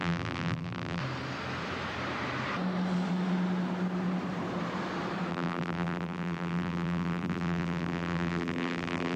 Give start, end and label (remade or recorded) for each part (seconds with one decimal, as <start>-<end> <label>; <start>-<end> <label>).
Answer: 0.0-1.0 remade; 1.0-5.3 recorded; 5.3-9.2 remade